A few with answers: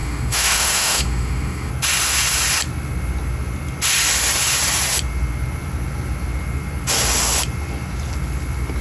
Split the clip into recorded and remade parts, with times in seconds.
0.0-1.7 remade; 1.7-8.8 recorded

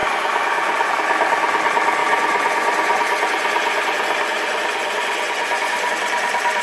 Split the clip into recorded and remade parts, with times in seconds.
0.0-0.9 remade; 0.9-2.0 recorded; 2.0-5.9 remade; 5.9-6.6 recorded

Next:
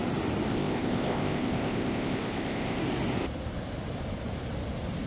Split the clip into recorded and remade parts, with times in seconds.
0.0-0.5 recorded; 0.5-2.8 remade; 2.8-5.1 recorded

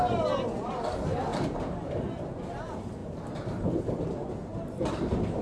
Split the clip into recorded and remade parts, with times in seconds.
0.0-1.3 recorded; 1.3-2.4 remade; 2.4-3.0 recorded; 3.0-4.0 remade; 4.0-5.4 recorded